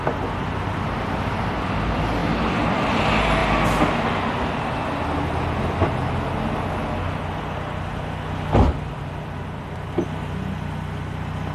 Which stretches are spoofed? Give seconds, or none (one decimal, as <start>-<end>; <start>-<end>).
none

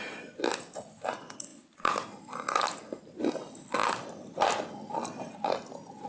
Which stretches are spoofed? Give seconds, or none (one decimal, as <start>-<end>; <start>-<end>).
3.8-4.7

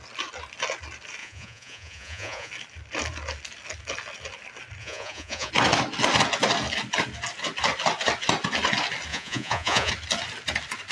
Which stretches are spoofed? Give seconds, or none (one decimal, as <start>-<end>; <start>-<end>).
1.2-2.5; 4.8-5.5; 9.1-9.9

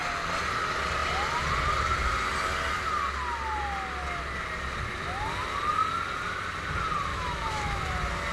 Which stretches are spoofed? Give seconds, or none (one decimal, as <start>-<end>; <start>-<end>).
7.1-7.8

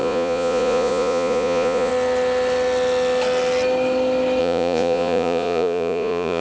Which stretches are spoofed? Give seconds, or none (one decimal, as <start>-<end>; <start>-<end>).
0.0-1.9; 4.4-6.4